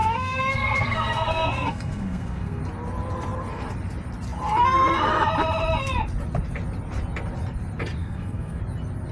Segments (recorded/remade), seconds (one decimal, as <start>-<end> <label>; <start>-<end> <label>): 0.0-2.6 remade; 2.6-8.0 recorded; 8.0-8.6 remade; 8.6-9.1 recorded